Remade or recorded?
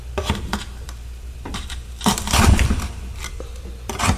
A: remade